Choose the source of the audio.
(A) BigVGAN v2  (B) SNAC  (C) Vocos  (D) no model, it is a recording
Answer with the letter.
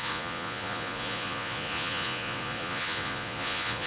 C